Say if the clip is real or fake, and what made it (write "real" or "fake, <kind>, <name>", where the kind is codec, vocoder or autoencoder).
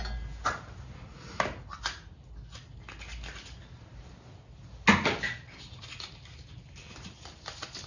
real